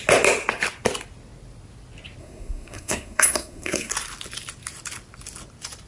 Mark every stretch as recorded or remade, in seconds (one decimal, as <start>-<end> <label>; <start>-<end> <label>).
0.0-2.2 recorded; 2.2-3.9 remade; 3.9-5.9 recorded